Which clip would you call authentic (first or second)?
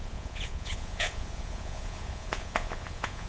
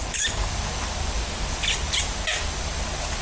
second